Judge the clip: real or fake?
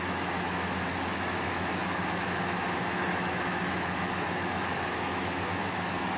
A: fake